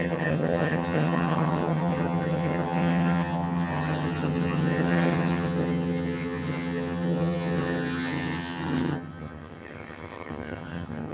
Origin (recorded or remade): remade